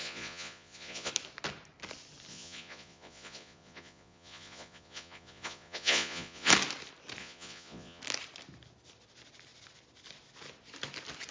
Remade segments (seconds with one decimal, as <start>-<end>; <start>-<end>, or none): 0.0-1.1; 2.3-6.5; 7.2-8.0